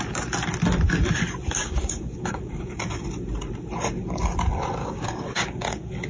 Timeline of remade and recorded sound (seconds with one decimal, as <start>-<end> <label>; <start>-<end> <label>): 0.0-1.6 recorded; 1.6-2.8 remade; 2.8-4.8 recorded; 4.8-6.1 remade

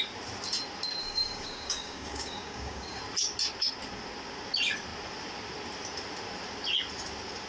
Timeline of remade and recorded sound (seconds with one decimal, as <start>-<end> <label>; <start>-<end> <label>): 0.0-1.0 recorded; 1.0-3.0 remade; 3.0-7.5 recorded

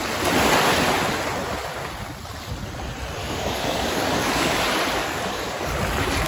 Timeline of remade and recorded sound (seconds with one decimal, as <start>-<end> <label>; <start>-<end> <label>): 0.0-3.2 recorded; 3.2-4.6 remade; 4.6-5.0 recorded; 5.0-5.7 remade; 5.7-6.3 recorded

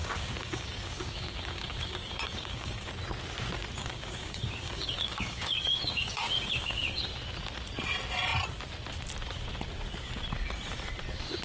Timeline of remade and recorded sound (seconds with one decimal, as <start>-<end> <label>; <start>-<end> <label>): 0.0-2.9 remade; 2.9-3.8 recorded; 3.8-7.0 remade; 7.0-11.4 recorded

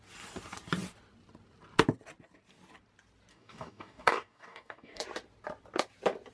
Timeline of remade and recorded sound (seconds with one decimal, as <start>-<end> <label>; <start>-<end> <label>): 0.0-3.3 recorded; 3.3-5.0 remade; 5.0-6.3 recorded